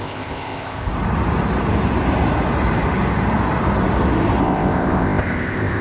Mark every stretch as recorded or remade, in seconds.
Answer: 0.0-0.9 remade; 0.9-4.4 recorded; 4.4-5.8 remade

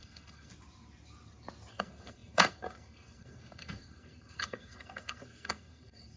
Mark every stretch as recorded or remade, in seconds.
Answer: 0.0-0.5 remade; 0.5-1.7 recorded; 1.7-6.2 remade